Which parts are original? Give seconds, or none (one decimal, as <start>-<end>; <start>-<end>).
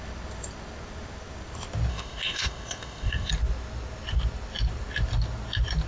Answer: 0.0-1.9; 3.3-5.9